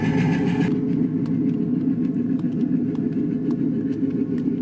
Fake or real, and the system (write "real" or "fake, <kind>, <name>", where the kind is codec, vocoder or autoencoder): real